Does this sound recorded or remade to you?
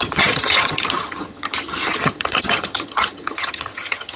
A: remade